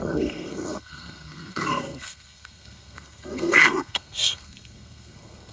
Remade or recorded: remade